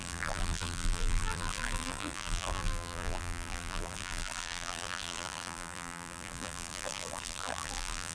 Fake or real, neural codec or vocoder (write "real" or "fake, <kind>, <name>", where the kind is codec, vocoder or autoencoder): fake, vocoder, BigVGAN v2